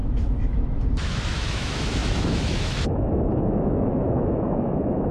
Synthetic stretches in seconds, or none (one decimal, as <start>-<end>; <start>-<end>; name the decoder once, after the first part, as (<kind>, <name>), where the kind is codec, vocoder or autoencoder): 0.0-5.1 (autoencoder, DAC-VAE)